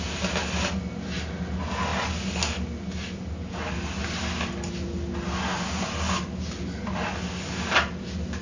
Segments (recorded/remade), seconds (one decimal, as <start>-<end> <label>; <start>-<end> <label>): 0.0-8.4 recorded